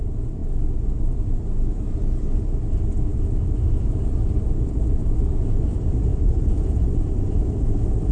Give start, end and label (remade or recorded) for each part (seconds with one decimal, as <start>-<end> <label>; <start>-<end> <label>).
0.0-6.1 recorded; 6.1-7.4 remade; 7.4-8.1 recorded